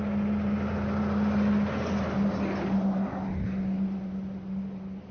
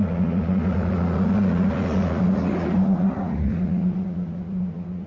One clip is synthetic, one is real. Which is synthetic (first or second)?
second